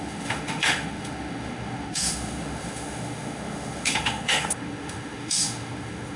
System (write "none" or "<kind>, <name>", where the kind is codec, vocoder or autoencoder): autoencoder, DAC-VAE